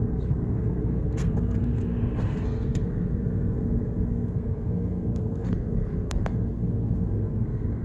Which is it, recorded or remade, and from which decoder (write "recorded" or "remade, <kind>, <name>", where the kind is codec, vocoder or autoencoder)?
remade, codec, SNAC